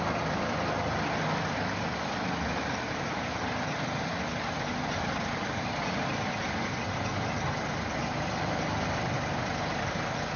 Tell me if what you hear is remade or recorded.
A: recorded